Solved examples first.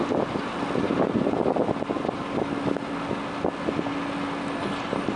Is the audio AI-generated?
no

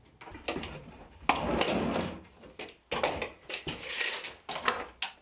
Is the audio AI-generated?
no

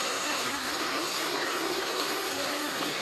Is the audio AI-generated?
yes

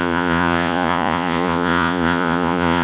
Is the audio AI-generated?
yes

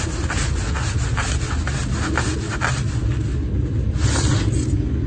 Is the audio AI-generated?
no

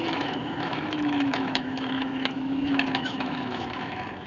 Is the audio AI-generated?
yes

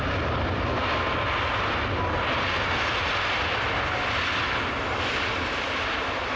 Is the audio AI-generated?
no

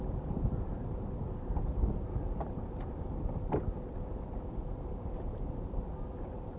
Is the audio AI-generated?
no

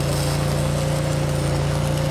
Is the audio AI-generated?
no